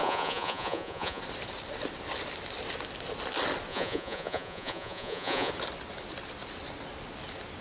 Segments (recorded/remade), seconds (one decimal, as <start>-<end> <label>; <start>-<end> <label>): 0.0-1.2 remade; 1.2-3.7 recorded; 3.7-5.5 remade; 5.5-7.6 recorded